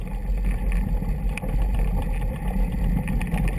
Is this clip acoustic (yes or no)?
yes